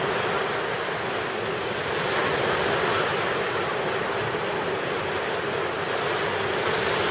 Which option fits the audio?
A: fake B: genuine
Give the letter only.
B